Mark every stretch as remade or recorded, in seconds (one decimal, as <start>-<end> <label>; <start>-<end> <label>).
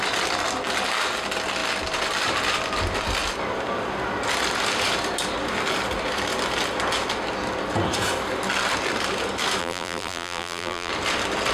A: 0.0-9.6 recorded; 9.6-10.9 remade; 10.9-11.5 recorded